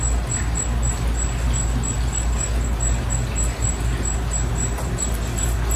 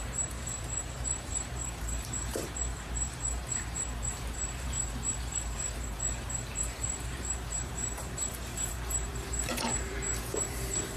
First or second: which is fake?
second